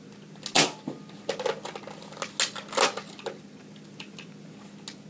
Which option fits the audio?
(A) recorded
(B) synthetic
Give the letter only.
A